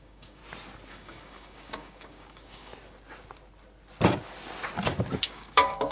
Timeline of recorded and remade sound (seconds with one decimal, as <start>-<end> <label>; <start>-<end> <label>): 0.0-0.4 remade; 0.4-0.9 recorded; 0.9-2.7 remade; 2.7-5.2 recorded; 5.2-5.9 remade

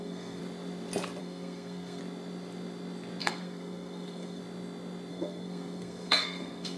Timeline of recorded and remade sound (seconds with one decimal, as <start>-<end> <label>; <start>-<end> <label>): 0.0-0.4 remade; 0.4-1.2 recorded; 1.2-2.0 remade; 2.0-3.2 recorded; 3.2-4.4 remade; 4.4-5.1 recorded; 5.1-6.8 remade